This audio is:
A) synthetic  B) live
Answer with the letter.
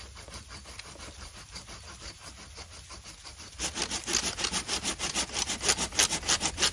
B